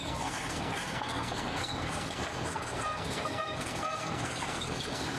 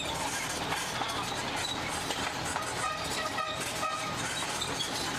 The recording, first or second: second